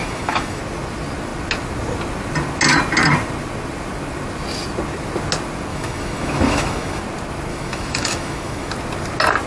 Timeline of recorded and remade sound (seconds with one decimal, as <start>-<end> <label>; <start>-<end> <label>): 0.0-0.6 remade; 0.6-5.7 recorded; 5.7-7.0 remade; 7.0-7.5 recorded; 7.5-8.7 remade; 8.7-9.5 recorded